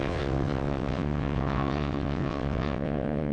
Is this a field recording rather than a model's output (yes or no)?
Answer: no